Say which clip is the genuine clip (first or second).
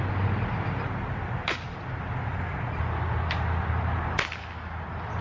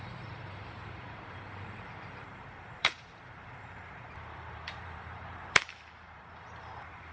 first